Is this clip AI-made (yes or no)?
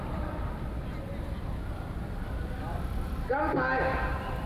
no